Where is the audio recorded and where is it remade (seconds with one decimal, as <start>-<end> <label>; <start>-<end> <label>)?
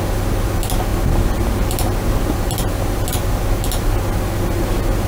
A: 0.0-5.1 recorded